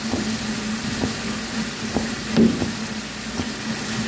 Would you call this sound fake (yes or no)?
no